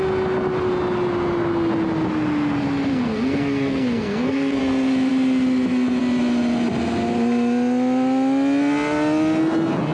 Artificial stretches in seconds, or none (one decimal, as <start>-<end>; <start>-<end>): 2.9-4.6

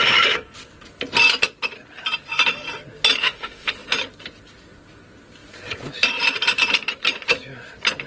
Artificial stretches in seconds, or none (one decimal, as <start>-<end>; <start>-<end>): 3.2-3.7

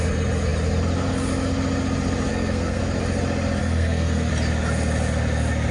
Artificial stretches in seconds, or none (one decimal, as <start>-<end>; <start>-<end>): 2.3-2.8; 3.6-4.3

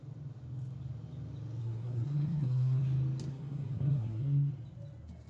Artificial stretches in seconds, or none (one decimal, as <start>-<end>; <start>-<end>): 1.6-2.8; 3.3-4.5

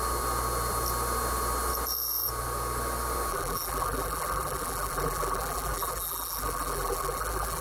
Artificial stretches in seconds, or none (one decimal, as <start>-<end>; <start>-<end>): 3.3-7.6